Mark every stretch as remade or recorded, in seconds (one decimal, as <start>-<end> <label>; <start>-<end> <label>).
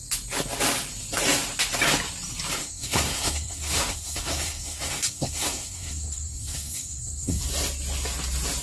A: 0.0-2.6 recorded; 2.6-7.4 remade; 7.4-8.6 recorded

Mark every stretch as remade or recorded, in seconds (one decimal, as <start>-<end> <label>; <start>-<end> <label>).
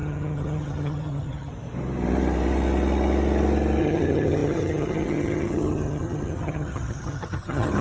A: 0.0-1.5 remade; 1.5-3.8 recorded; 3.8-7.8 remade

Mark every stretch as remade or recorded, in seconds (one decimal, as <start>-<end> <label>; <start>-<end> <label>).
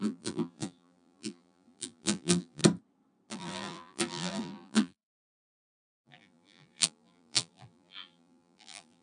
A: 0.0-2.6 remade; 2.6-3.3 recorded; 3.3-9.0 remade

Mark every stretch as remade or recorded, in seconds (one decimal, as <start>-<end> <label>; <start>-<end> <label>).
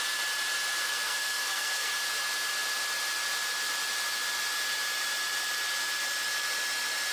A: 0.0-0.8 recorded; 0.8-1.9 remade; 1.9-7.1 recorded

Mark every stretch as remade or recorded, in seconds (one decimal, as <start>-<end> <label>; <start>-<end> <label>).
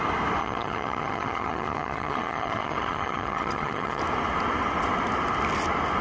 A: 0.0-0.4 recorded; 0.4-4.0 remade; 4.0-6.0 recorded